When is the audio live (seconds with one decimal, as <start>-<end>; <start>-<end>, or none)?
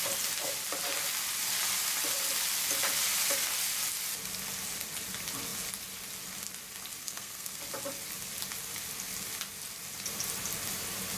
0.0-7.0; 7.6-11.2